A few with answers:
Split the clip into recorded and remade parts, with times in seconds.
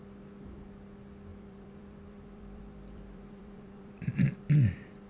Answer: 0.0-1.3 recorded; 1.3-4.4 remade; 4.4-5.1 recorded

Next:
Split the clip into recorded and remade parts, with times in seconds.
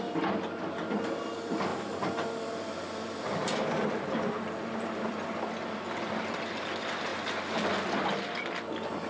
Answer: 0.0-1.7 recorded; 1.7-6.6 remade; 6.6-9.1 recorded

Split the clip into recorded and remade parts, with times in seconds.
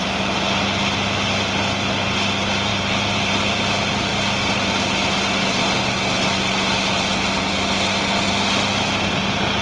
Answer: 0.0-2.7 recorded; 2.7-3.5 remade; 3.5-9.6 recorded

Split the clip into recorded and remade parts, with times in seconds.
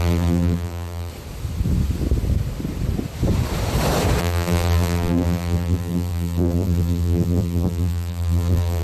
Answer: 0.0-1.1 remade; 1.1-4.2 recorded; 4.2-8.8 remade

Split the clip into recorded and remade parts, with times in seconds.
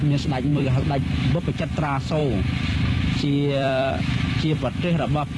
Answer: 0.0-0.5 recorded; 0.5-1.4 remade; 1.4-2.2 recorded; 2.2-3.9 remade; 3.9-5.4 recorded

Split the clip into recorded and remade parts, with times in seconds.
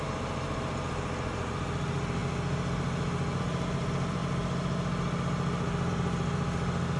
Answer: 0.0-2.2 remade; 2.2-3.4 recorded; 3.4-4.2 remade; 4.2-5.9 recorded; 5.9-7.0 remade